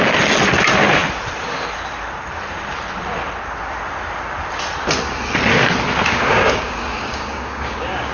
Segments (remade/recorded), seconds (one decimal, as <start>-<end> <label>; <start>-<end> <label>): 0.0-6.1 recorded; 6.1-8.1 remade